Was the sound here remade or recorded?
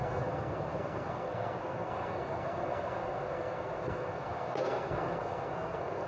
remade